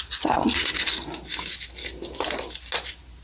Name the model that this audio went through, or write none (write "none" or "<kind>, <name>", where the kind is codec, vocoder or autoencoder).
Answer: none